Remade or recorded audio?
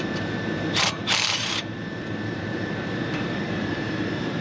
remade